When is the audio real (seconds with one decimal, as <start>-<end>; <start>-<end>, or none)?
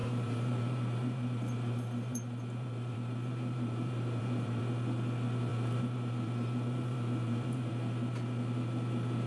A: 4.6-5.5; 7.7-9.3